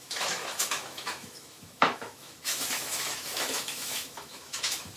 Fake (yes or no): yes